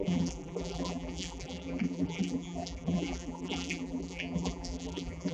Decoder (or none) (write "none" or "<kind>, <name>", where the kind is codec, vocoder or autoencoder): vocoder, BigVGAN v2